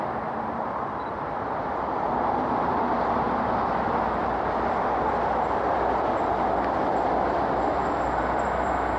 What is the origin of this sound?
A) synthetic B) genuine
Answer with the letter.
A